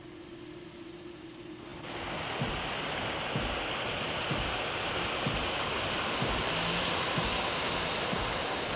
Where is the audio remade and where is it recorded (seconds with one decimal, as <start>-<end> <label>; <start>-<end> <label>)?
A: 0.0-8.8 recorded